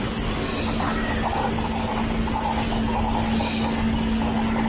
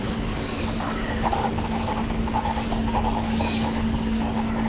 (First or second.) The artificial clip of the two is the second